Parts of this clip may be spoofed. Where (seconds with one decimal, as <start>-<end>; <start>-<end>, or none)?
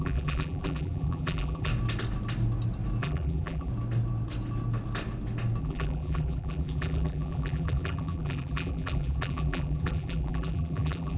0.0-1.7; 3.0-3.7; 5.6-11.2